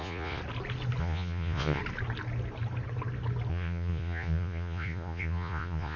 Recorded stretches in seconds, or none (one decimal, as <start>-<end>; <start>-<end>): 0.4-1.0; 1.8-3.5